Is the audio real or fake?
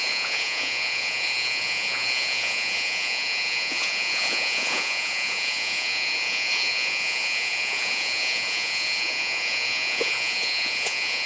fake